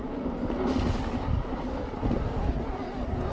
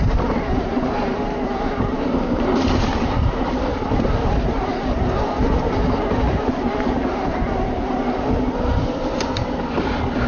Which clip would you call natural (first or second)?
first